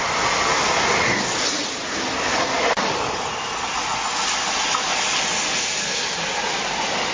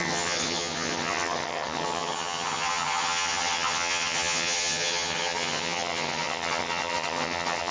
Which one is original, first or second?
first